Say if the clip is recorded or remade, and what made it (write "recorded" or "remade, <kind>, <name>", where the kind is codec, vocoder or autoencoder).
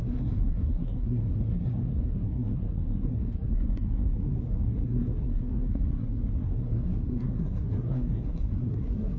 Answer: remade, codec, SNAC